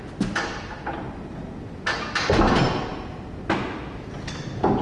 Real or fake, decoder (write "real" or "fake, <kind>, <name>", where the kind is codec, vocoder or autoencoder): real